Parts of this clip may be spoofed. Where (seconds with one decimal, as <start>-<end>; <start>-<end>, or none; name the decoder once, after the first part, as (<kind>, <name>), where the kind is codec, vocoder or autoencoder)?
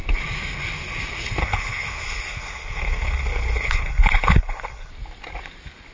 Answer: 1.4-4.9 (codec, HILCodec)